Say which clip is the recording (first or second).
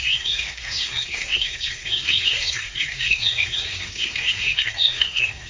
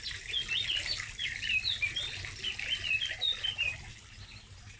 second